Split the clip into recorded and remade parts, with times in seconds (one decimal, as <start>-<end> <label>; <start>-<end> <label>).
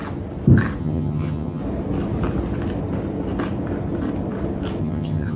0.0-0.8 recorded; 0.8-1.6 remade; 1.6-4.8 recorded; 4.8-5.4 remade